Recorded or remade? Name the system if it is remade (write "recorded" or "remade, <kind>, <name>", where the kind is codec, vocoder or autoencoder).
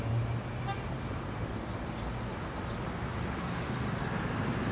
recorded